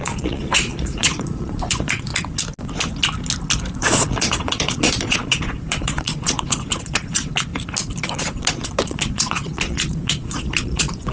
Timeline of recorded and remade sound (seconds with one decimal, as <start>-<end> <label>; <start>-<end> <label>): 0.0-2.1 remade; 2.1-3.7 recorded; 3.7-7.5 remade; 7.5-8.0 recorded; 8.0-11.1 remade